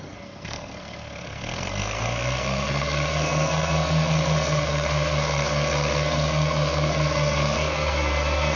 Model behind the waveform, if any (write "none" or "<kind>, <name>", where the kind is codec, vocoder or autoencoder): codec, SNAC